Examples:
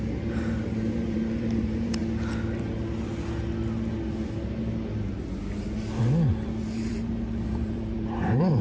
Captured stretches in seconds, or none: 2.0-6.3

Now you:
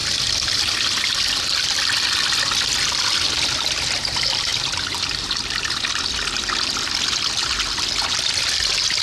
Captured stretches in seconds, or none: 0.0-9.0

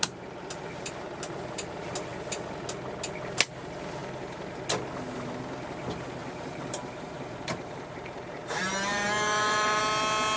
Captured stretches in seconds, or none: 0.0-4.0; 4.5-6.2; 9.8-10.4